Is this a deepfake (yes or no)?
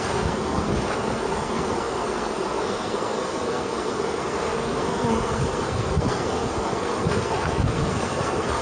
yes